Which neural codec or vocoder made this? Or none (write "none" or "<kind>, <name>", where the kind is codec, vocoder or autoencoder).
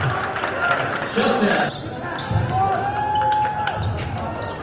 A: none